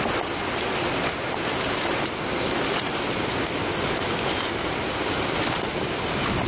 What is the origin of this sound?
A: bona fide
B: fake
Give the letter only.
A